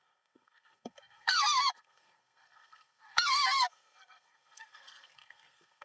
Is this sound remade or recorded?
remade